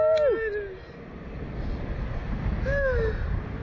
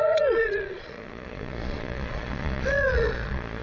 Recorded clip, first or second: first